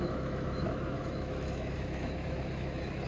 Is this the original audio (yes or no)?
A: no